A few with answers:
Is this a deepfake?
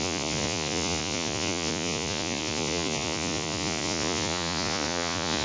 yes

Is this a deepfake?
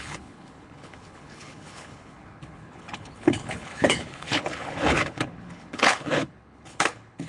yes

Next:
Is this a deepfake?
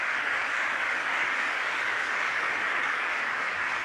yes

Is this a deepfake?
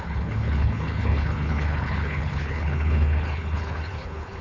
yes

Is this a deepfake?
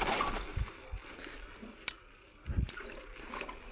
no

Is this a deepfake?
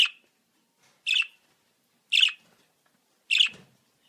no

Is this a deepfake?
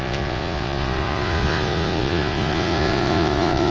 yes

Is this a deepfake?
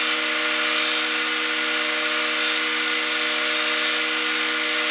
no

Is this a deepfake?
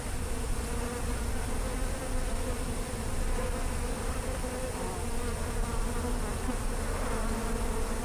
no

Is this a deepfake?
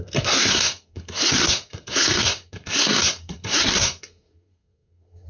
yes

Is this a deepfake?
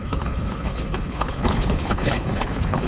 yes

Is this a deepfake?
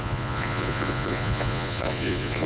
yes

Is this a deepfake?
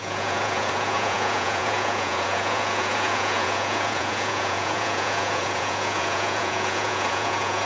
yes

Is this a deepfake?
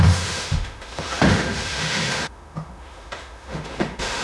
yes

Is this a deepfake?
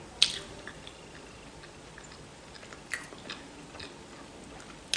no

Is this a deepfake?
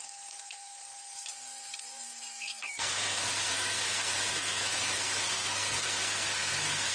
yes